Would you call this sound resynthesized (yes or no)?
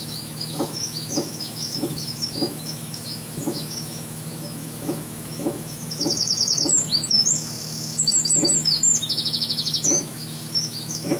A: yes